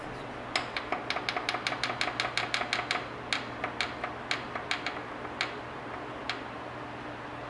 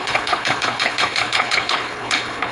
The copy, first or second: second